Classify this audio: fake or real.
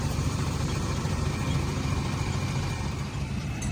fake